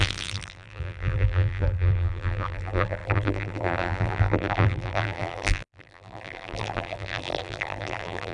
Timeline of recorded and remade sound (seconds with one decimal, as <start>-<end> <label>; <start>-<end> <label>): 0.0-8.3 remade